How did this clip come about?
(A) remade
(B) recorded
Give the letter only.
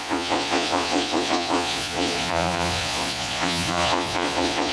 A